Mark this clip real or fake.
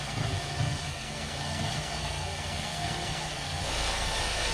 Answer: fake